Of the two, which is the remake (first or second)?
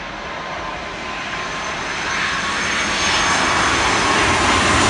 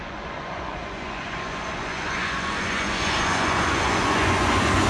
second